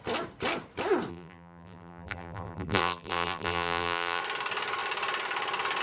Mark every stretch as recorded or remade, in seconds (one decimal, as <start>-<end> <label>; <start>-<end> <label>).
0.0-1.1 recorded; 1.1-4.2 remade; 4.2-5.8 recorded